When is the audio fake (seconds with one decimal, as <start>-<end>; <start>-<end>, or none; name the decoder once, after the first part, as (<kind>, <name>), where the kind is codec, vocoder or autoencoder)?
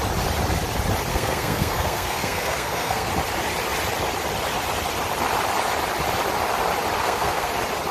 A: 1.1-3.1 (codec, SNAC); 7.0-7.5